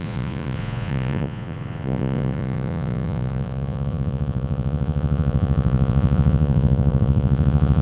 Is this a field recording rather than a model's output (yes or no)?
no